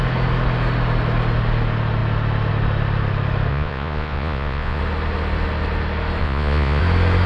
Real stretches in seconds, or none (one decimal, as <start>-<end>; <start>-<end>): 0.0-3.5; 4.8-6.2; 6.8-7.3